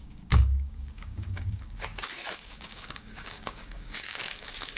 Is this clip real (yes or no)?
no